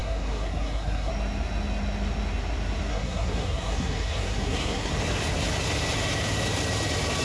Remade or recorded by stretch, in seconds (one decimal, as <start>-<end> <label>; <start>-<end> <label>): 0.0-1.1 remade; 1.1-2.9 recorded; 2.9-4.9 remade; 4.9-7.2 recorded